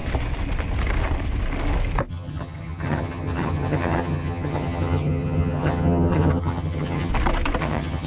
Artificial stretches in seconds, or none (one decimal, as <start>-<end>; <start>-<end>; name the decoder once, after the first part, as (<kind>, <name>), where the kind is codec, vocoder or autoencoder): 2.1-7.1 (vocoder, HiFi-GAN); 7.6-8.1